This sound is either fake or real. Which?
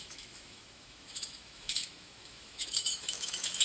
fake